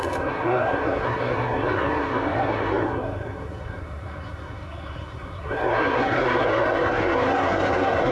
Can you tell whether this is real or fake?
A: fake